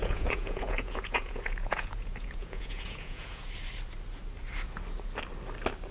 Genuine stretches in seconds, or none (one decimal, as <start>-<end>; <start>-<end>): 3.4-5.9